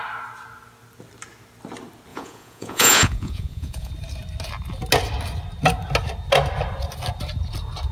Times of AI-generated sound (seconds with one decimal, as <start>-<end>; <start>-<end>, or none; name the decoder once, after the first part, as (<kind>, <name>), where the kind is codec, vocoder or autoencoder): 2.1-3.9 (vocoder, Vocos)